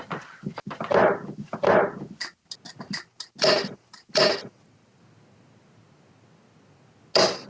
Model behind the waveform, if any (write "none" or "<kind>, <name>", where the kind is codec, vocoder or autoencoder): none